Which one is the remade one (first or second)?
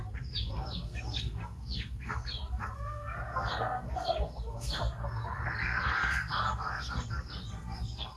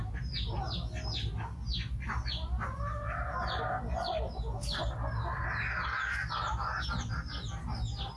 first